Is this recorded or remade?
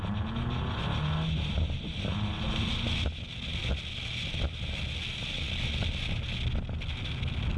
recorded